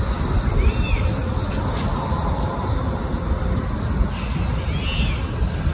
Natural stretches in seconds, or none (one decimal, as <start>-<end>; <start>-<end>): 0.0-5.7